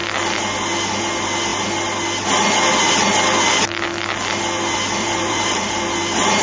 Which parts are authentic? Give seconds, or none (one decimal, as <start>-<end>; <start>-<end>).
0.0-5.0; 5.8-6.4